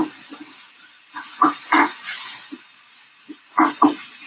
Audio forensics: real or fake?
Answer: fake